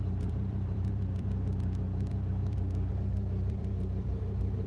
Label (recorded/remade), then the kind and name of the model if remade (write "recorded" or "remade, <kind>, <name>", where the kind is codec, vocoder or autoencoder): remade, vocoder, BigVGAN v2